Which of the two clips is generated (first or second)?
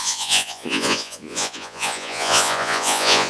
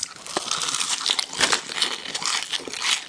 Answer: first